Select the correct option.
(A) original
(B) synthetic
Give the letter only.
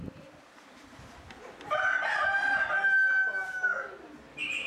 A